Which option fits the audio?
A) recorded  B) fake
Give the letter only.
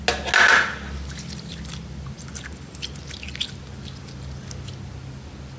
A